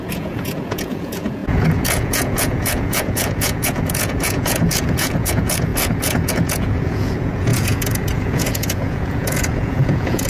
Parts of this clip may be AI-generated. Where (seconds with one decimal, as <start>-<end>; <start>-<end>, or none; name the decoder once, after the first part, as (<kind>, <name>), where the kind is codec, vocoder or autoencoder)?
0.0-10.3 (vocoder, Vocos)